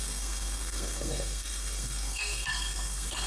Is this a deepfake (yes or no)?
yes